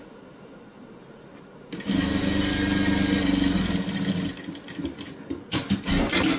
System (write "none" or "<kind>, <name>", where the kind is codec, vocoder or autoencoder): none